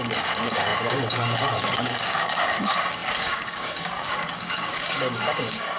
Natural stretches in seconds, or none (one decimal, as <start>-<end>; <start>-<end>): none